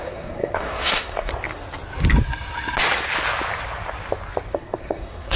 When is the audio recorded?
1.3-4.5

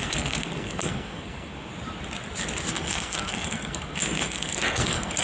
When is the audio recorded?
1.7-2.7

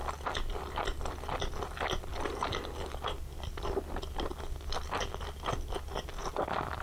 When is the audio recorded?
0.0-6.8

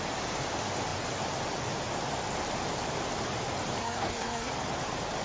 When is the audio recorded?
0.0-3.8; 4.5-5.2

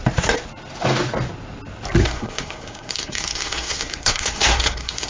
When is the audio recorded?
0.0-2.0